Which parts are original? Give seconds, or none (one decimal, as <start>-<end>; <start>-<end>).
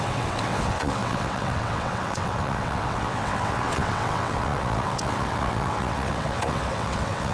none